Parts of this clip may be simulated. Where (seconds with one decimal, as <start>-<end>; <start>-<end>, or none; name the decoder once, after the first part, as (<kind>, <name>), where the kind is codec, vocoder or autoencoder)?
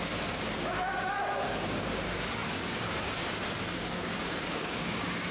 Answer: 0.0-5.3 (codec, DAC)